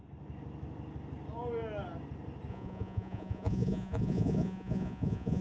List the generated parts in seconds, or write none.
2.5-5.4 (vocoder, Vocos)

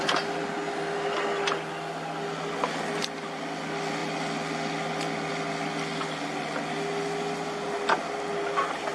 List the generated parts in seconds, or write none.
none

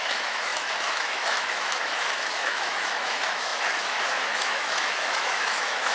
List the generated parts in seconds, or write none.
0.0-5.9 (autoencoder, DAC-VAE)

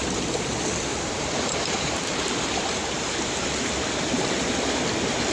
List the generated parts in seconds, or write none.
0.9-3.7 (vocoder, BigVGAN v2)

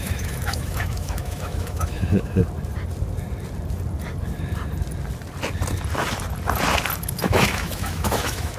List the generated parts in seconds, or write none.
0.0-2.4 (autoencoder, DAC-VAE); 7.2-8.6

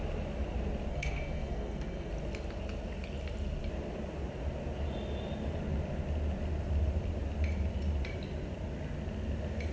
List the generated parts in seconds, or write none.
0.9-2.1 (codec, SNAC)